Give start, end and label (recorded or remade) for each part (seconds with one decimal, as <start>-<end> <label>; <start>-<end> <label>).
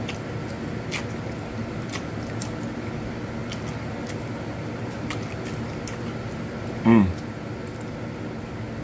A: 0.0-8.8 recorded